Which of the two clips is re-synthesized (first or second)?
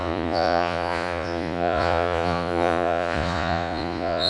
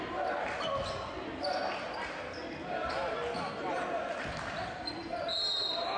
first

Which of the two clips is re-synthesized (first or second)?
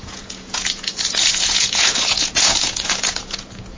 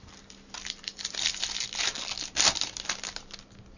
first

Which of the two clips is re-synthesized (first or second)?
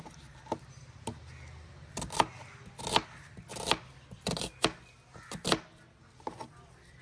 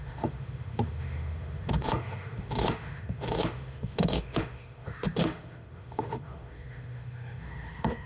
second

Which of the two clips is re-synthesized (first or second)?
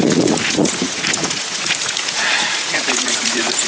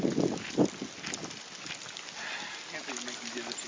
first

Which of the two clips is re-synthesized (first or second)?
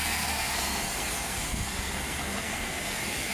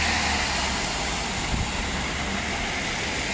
first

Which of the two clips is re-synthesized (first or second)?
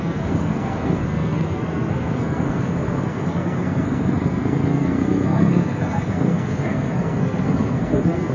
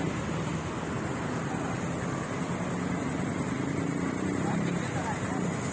first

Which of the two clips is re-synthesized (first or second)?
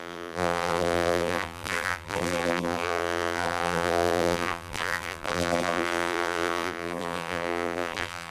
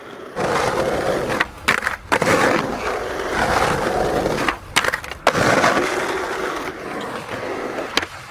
first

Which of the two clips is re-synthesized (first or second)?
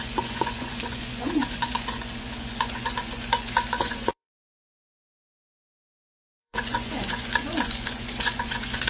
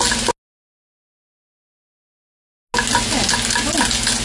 first